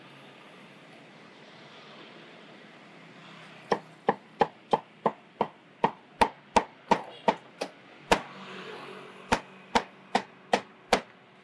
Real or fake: real